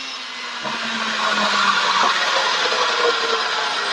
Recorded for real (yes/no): yes